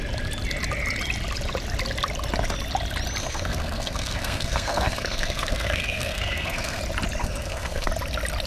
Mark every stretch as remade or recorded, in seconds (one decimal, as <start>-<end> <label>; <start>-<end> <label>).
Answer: 0.0-3.2 recorded; 3.2-6.8 remade; 6.8-7.2 recorded; 7.2-7.9 remade; 7.9-8.5 recorded